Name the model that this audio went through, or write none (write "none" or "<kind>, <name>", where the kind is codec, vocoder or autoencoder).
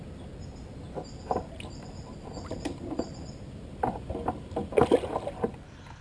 none